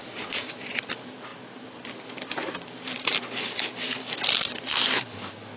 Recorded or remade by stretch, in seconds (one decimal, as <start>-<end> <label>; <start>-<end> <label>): 0.0-5.6 recorded